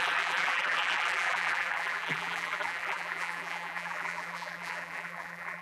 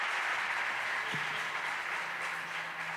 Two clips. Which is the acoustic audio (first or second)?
second